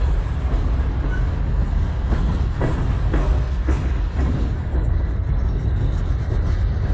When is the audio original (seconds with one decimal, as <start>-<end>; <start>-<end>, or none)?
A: 0.0-1.5; 2.6-3.2; 4.1-4.6; 6.1-6.9